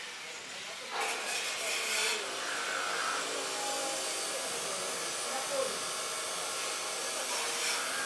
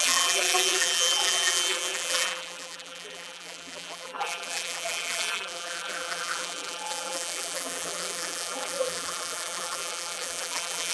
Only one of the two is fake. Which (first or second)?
second